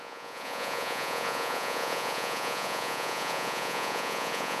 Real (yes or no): no